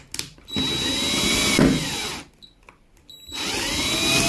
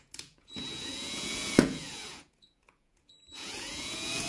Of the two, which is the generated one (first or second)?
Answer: second